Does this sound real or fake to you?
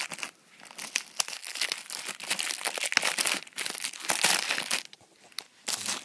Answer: real